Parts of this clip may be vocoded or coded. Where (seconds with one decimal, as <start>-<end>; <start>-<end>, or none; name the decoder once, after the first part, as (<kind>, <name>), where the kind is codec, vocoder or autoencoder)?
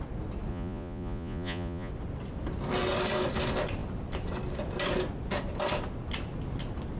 0.5-1.9 (vocoder, Vocos)